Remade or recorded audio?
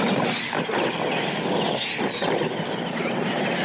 recorded